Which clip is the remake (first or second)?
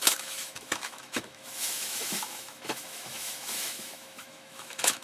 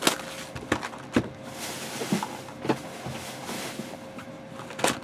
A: first